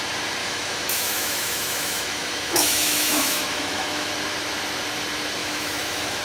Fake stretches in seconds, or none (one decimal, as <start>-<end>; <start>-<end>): 0.4-4.1; 5.4-6.2